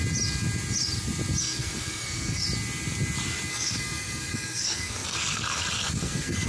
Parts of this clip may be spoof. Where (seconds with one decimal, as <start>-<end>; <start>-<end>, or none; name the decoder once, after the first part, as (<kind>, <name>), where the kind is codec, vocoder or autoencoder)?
1.4-2.4 (codec, SNAC); 3.5-6.5